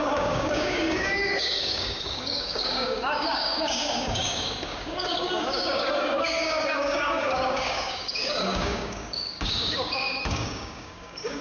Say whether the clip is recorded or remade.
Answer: remade